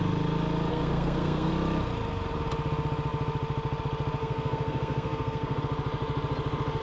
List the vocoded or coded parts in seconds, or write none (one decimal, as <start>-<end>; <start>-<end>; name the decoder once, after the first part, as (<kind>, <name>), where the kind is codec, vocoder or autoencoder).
0.7-1.5 (codec, SNAC); 4.2-5.6